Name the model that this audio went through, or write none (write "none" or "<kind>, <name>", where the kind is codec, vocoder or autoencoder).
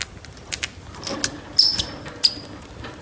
none